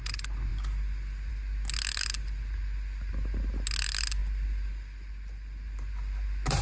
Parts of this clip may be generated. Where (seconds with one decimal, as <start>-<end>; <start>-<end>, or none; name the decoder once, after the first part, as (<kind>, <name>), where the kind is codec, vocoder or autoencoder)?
none